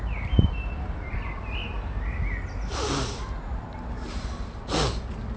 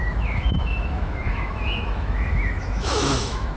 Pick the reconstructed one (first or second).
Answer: second